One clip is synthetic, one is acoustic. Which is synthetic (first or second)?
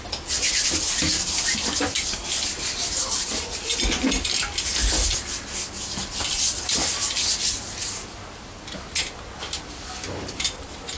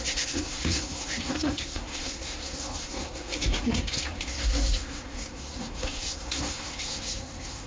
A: second